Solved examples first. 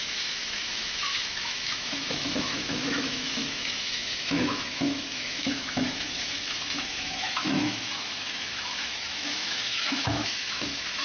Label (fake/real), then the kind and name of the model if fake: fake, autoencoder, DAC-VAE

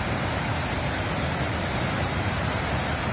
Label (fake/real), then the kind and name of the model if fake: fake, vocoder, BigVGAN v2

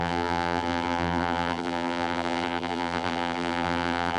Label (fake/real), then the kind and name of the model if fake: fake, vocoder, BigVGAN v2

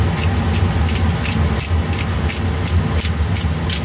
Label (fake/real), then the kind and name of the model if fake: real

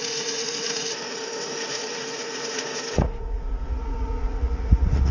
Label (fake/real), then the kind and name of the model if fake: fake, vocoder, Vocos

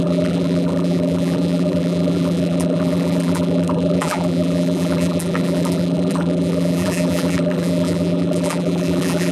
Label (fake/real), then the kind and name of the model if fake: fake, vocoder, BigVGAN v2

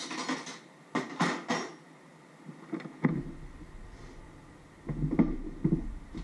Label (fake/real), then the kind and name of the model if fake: real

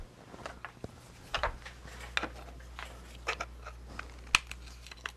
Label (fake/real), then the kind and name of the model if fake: real